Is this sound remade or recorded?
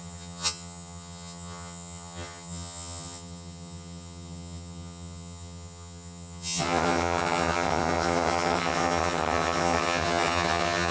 remade